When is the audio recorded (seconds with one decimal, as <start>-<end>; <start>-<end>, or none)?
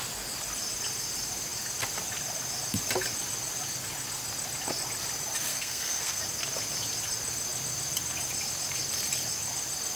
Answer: 0.0-5.5; 6.2-9.9